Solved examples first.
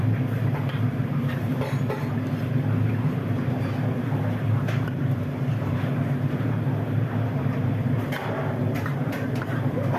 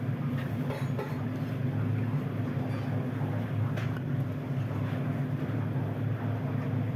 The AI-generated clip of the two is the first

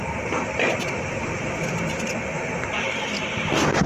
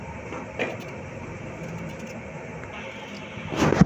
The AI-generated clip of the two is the first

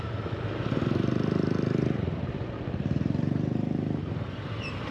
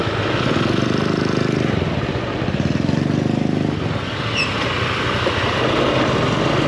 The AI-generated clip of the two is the first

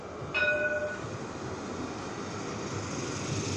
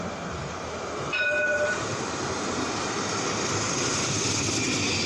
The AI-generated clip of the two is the second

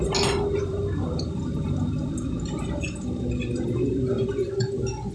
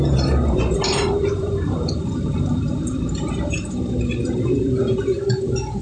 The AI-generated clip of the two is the second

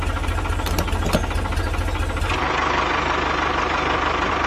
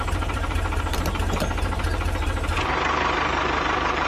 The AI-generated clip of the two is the second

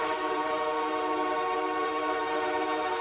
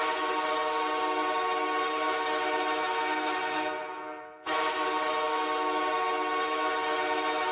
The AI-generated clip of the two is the first